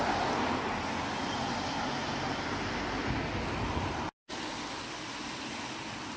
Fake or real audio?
real